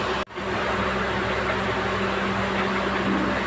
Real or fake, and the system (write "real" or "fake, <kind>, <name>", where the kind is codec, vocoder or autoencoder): real